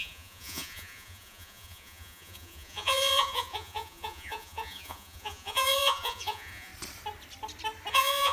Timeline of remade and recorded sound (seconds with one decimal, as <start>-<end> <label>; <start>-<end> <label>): 0.0-6.7 remade; 6.7-7.9 recorded; 7.9-8.3 remade